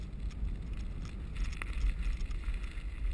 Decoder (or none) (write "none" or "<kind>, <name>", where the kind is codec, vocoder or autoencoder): none